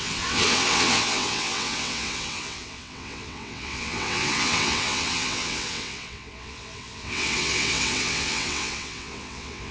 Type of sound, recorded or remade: remade